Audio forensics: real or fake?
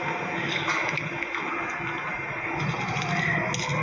real